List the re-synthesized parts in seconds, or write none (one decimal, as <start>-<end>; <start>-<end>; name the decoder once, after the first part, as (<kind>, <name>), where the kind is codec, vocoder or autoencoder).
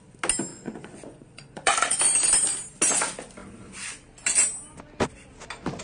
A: 0.5-2.0 (vocoder, Vocos)